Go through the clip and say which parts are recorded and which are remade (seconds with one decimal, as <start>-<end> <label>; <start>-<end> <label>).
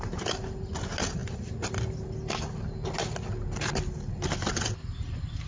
0.0-5.5 recorded